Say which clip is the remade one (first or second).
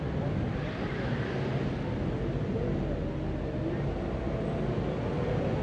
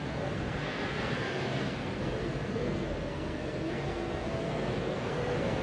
second